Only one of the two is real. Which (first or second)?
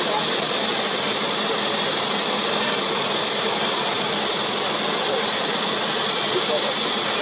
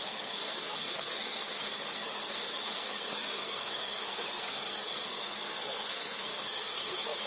first